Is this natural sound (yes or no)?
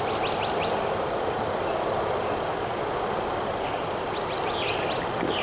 yes